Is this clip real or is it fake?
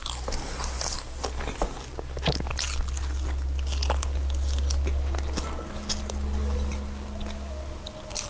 real